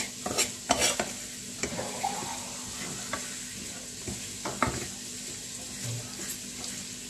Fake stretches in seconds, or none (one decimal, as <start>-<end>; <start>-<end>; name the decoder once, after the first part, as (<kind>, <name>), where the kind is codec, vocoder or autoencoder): none